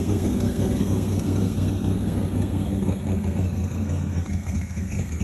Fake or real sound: fake